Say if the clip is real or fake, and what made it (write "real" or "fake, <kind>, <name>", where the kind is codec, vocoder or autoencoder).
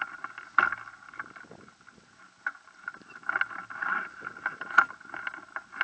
real